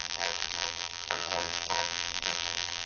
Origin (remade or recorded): remade